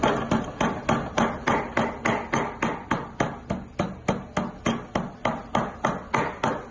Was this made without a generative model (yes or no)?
yes